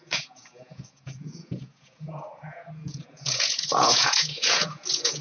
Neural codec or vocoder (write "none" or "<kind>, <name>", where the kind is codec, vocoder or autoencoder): vocoder, Vocos